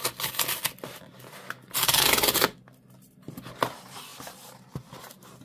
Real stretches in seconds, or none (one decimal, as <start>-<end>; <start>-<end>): 0.0-5.4